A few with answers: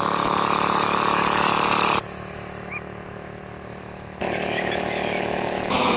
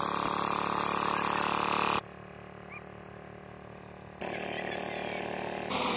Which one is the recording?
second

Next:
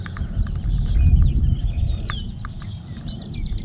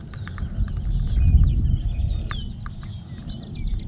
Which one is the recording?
second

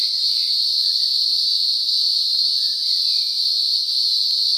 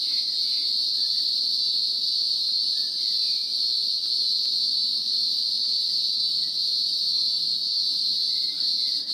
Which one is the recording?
second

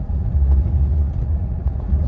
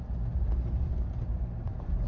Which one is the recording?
second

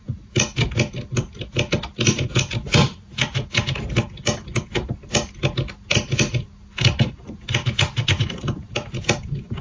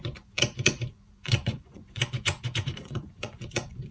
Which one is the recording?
first